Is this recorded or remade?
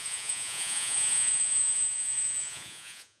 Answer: remade